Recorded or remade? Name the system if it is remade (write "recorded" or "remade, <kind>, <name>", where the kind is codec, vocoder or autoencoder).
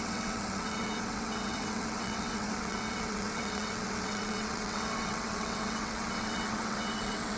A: remade, vocoder, WaveNeXt